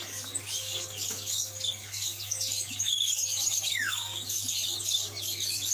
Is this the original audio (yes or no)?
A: no